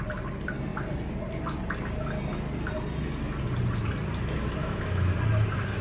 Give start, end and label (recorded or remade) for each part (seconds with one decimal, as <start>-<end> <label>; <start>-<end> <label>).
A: 0.0-4.6 recorded; 4.6-5.1 remade; 5.1-5.8 recorded